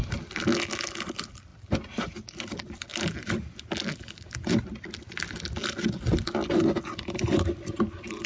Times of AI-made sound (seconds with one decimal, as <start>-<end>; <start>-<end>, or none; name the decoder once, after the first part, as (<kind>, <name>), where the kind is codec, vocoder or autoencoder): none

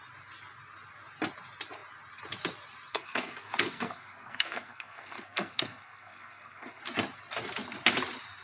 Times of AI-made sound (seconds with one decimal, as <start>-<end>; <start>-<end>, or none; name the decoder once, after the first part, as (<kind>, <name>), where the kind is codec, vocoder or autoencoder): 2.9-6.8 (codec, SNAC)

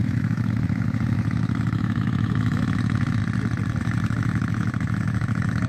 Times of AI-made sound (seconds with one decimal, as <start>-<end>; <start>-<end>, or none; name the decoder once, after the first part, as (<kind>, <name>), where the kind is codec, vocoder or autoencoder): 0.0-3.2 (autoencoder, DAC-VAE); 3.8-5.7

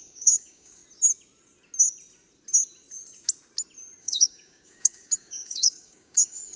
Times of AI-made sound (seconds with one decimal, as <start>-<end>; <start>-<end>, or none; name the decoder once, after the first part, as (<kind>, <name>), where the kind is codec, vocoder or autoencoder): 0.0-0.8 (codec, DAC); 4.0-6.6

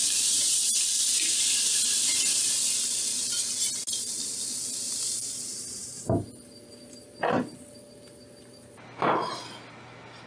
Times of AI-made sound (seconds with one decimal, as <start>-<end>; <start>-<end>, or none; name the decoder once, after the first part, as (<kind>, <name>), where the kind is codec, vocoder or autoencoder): 0.0-0.8 (vocoder, BigVGAN v2); 5.5-6.4